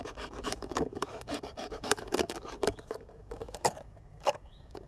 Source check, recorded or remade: remade